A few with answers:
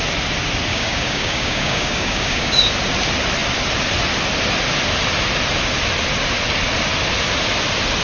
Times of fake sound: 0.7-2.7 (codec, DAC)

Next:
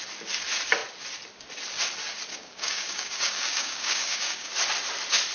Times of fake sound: 2.3-4.5 (codec, DAC)

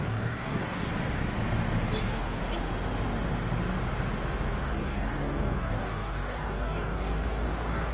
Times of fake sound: 0.0-0.9 (codec, DAC); 2.0-2.4; 4.6-7.9

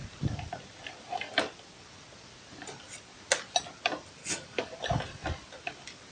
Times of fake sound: 4.2-4.7 (codec, DAC)

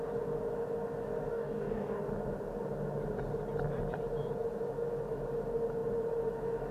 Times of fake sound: 1.3-2.0 (codec, DAC)

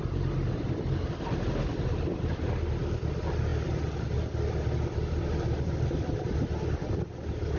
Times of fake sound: none